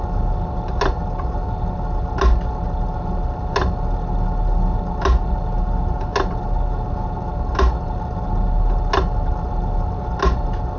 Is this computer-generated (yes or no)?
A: no